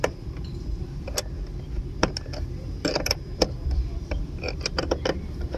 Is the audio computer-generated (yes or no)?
yes